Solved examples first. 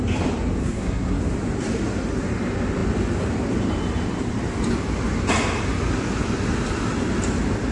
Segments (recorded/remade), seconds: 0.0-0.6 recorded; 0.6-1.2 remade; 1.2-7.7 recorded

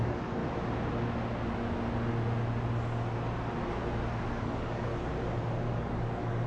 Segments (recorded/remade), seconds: 0.0-0.4 remade; 0.4-4.3 recorded; 4.3-4.9 remade; 4.9-5.7 recorded; 5.7-6.5 remade

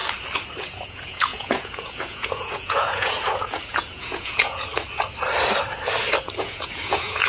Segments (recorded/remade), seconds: 0.0-0.6 recorded; 0.6-4.7 remade; 4.7-6.4 recorded; 6.4-7.3 remade